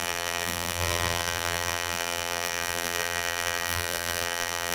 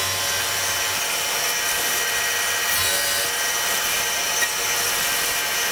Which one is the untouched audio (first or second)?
second